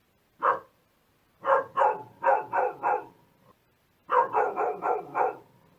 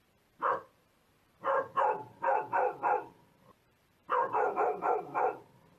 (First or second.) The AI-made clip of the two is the second